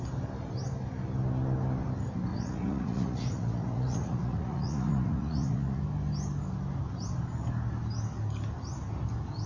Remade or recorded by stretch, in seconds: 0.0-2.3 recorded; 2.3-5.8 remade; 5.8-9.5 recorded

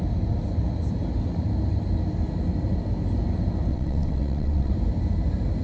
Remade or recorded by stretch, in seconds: 0.0-3.7 recorded; 3.7-4.7 remade; 4.7-5.6 recorded